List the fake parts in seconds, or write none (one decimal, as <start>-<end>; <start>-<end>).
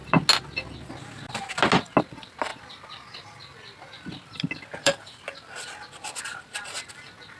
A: 2.0-7.4